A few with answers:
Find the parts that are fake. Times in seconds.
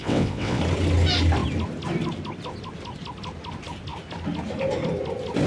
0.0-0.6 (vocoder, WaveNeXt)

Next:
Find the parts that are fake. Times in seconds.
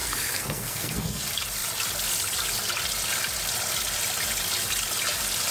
0.0-1.2 (codec, SNAC)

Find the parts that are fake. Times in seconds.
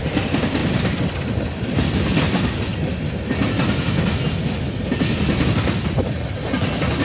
0.6-1.1 (vocoder, BigVGAN v2)